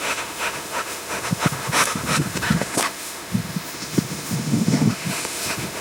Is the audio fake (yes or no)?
yes